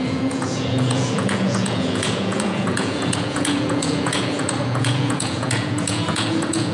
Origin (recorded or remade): remade